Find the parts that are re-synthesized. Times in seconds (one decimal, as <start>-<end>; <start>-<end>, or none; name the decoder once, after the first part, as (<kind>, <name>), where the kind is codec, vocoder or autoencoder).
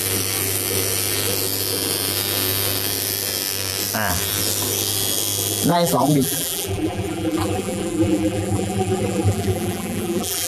5.7-10.5 (vocoder, BigVGAN v2)